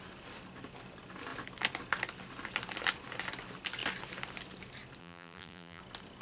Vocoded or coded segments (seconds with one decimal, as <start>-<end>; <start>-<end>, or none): 5.0-5.8